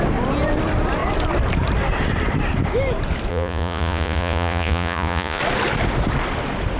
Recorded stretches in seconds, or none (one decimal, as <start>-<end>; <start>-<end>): 0.0-3.3; 5.4-6.8